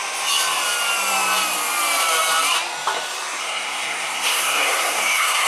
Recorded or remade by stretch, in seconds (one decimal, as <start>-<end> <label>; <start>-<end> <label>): 0.0-3.4 recorded; 3.4-5.5 remade